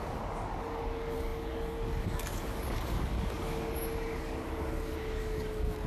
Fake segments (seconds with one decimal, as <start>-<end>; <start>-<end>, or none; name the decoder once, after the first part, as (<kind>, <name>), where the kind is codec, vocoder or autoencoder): 0.0-5.9 (codec, DAC)